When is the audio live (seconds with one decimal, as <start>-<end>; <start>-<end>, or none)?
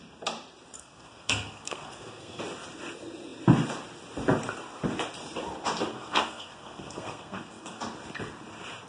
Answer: 0.0-0.8; 2.4-5.9; 7.8-8.9